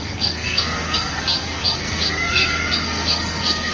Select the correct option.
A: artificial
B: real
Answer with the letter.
A